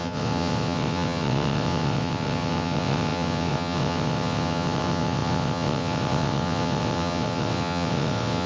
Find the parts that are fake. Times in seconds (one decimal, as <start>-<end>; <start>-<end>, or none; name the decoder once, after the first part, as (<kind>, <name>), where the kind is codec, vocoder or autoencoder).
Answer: 0.0-8.5 (vocoder, WaveNeXt)